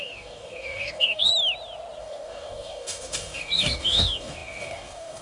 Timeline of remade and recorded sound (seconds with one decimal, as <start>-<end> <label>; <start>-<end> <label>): 0.0-1.3 remade; 1.3-2.0 recorded; 2.0-5.2 remade